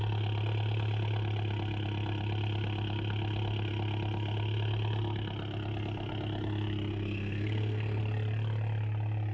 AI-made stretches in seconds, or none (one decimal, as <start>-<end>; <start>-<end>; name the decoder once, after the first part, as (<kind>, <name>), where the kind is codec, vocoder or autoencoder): 6.9-8.0 (codec, SNAC)